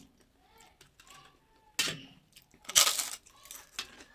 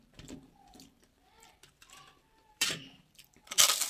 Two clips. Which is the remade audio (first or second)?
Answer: second